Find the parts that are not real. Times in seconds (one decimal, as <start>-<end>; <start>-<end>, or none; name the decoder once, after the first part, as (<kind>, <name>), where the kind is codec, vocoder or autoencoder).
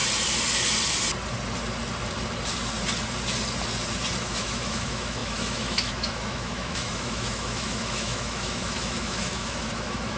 4.2-10.2 (autoencoder, DAC-VAE)